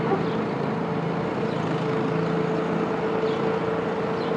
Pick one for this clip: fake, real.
real